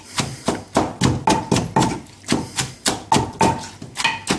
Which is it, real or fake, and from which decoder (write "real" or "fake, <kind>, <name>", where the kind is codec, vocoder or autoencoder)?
real